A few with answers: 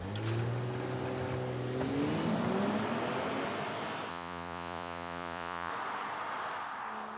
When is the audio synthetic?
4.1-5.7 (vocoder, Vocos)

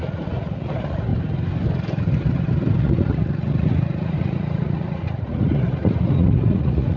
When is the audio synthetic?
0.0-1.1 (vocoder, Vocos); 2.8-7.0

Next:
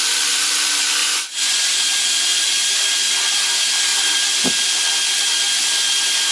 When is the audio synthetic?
1.0-1.8 (vocoder, Vocos)